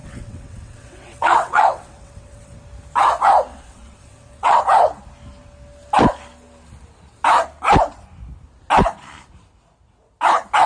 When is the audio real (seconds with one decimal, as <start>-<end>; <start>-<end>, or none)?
2.6-3.5; 4.6-10.7